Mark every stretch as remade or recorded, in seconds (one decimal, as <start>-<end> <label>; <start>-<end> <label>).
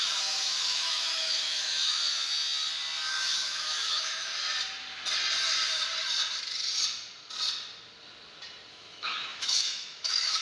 0.0-2.0 remade; 2.0-3.1 recorded; 3.1-4.3 remade; 4.3-8.7 recorded; 8.7-10.4 remade